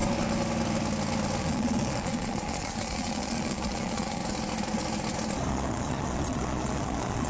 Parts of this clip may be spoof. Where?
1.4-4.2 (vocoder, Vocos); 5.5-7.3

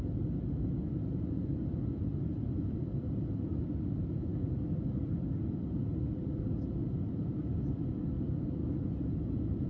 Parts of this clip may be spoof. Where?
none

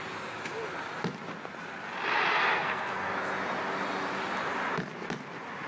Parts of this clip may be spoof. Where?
2.3-3.1 (codec, SNAC)